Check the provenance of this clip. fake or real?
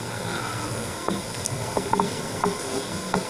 fake